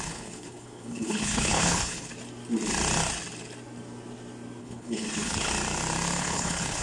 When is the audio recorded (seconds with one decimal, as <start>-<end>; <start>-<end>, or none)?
2.1-4.6; 5.5-6.2